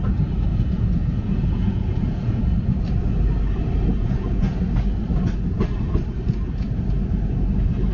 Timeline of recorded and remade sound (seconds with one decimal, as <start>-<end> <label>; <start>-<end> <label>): 0.0-0.5 recorded; 0.5-2.4 remade; 2.4-4.0 recorded; 4.0-4.6 remade; 4.6-7.9 recorded